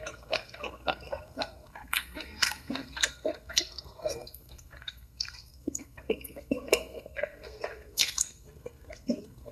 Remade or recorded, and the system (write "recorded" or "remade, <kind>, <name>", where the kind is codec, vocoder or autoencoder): remade, codec, SNAC